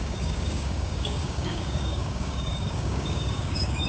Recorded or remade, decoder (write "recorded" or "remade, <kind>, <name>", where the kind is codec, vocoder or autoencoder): remade, codec, DAC